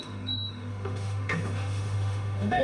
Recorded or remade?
remade